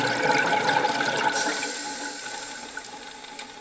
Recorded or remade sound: recorded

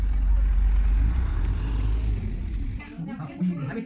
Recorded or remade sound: recorded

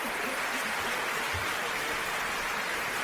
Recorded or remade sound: recorded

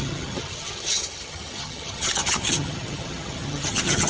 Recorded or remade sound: remade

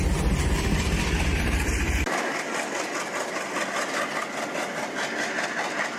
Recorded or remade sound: recorded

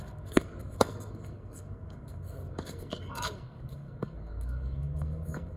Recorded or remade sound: remade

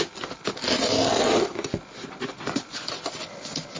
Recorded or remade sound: recorded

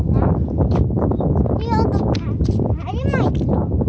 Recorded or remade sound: recorded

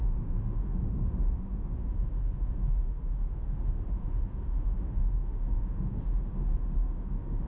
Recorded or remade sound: remade